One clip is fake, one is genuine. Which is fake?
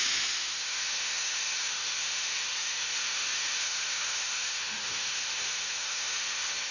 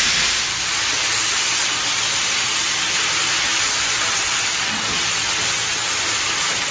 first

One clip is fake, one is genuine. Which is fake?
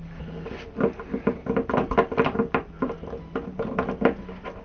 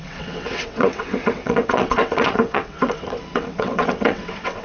second